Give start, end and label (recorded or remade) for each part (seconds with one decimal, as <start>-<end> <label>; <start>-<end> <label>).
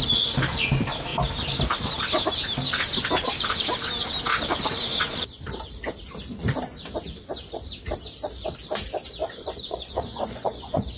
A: 0.0-9.2 recorded; 9.2-11.0 remade